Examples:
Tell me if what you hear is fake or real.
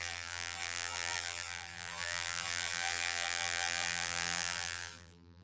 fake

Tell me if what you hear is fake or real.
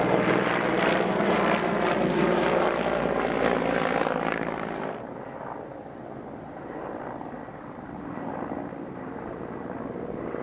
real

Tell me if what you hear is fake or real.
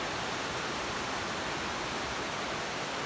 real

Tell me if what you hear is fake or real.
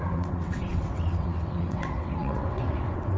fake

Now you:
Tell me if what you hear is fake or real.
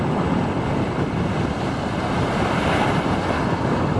real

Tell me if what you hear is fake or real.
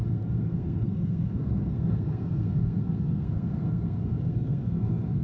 fake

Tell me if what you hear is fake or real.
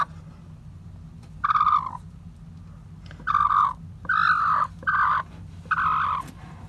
real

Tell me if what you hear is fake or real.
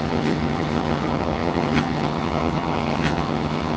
fake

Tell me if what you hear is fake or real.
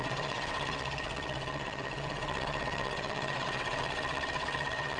fake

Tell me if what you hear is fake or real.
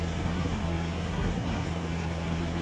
fake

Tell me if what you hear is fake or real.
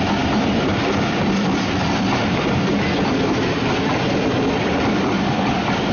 real